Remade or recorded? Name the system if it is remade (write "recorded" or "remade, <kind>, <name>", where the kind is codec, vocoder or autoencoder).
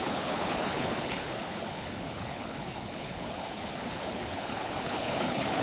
remade, codec, HILCodec